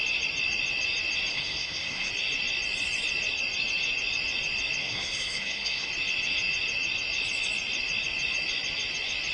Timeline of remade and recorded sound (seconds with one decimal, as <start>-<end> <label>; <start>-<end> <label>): 0.0-1.3 recorded; 1.3-2.1 remade; 2.1-4.8 recorded; 4.8-5.9 remade; 5.9-9.3 recorded